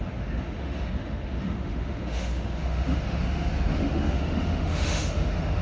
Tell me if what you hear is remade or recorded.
remade